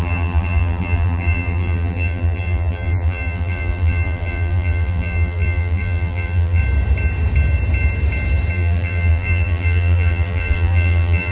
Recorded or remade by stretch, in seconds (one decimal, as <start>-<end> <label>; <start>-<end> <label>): 0.0-6.6 remade; 6.6-8.5 recorded; 8.5-11.3 remade